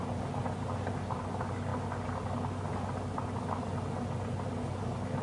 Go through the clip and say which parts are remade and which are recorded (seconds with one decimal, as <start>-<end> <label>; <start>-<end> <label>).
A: 0.0-5.2 recorded

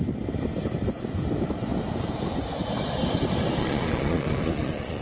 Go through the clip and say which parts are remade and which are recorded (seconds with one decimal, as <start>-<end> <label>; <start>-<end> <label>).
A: 0.0-3.6 recorded; 3.6-5.0 remade

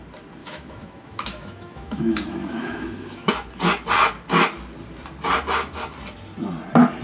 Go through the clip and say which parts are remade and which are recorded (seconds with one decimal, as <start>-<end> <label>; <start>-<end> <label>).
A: 0.0-0.4 recorded; 0.4-3.3 remade; 3.3-7.0 recorded

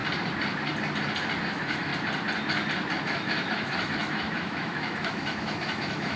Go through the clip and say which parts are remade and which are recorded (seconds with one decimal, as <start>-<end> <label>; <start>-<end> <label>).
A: 0.0-1.4 recorded; 1.4-1.9 remade; 1.9-3.0 recorded; 3.0-6.2 remade

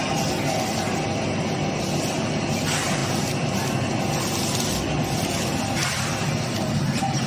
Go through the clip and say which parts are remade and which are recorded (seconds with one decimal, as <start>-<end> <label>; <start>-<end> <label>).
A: 0.0-7.3 recorded

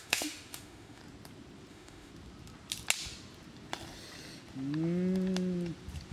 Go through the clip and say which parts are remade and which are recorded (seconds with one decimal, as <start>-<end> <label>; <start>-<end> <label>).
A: 0.0-1.0 remade; 1.0-1.7 recorded; 1.7-2.1 remade; 2.1-6.1 recorded